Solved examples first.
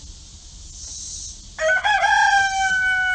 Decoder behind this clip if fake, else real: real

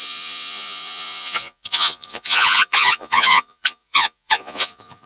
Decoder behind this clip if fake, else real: fake, vocoder, Vocos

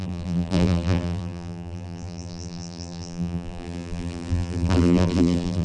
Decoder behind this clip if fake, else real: fake, vocoder, BigVGAN v2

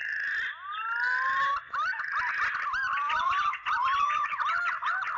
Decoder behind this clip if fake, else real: real